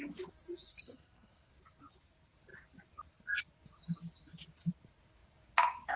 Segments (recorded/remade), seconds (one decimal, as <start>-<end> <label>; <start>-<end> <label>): 0.0-0.7 recorded; 0.7-1.5 remade; 1.5-6.0 recorded